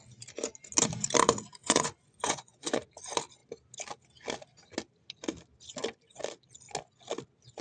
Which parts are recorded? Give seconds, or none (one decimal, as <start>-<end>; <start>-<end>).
0.0-1.6; 2.8-7.6